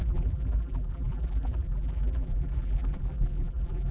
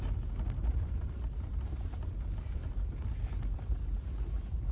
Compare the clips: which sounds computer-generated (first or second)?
first